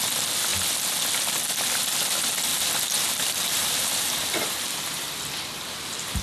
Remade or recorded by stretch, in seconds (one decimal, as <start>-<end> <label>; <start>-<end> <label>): 0.0-2.5 recorded; 2.5-5.1 remade; 5.1-6.2 recorded